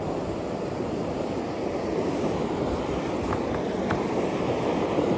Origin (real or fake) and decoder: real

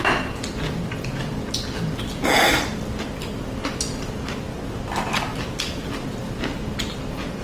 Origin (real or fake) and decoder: real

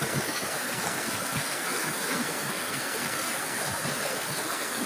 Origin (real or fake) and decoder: fake, codec, SNAC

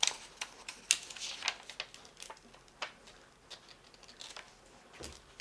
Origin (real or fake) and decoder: real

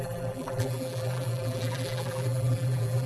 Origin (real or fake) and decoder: fake, vocoder, BigVGAN v2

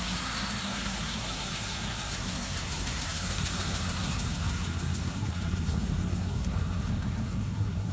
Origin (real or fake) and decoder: fake, codec, SNAC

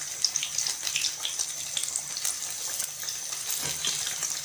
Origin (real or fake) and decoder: real